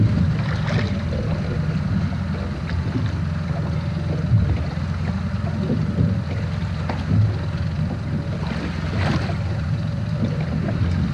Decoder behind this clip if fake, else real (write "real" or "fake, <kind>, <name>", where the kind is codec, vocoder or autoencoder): real